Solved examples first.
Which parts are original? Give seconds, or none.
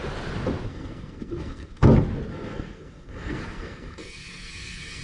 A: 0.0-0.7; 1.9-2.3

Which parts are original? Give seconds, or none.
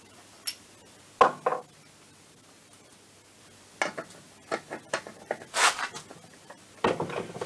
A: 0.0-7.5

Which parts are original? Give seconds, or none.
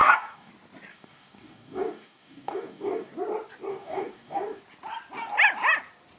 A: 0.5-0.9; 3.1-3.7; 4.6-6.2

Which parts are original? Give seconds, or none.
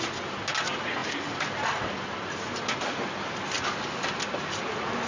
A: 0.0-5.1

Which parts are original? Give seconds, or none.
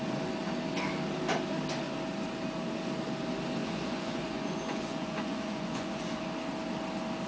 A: 0.0-3.6; 6.2-7.3